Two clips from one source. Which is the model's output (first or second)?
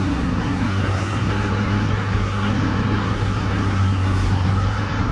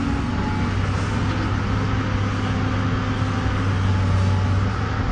first